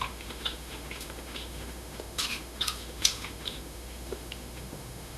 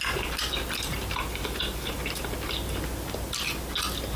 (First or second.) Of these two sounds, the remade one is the first